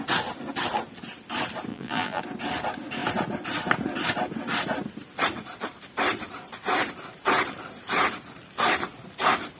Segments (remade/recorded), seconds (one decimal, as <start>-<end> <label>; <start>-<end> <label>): 0.0-1.7 recorded; 1.7-2.2 remade; 2.2-9.6 recorded